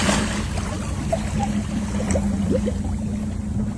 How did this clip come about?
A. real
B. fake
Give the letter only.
A